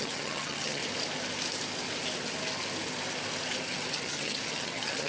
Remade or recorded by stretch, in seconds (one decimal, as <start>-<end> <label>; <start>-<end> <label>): 0.0-0.8 remade; 0.8-3.9 recorded; 3.9-5.1 remade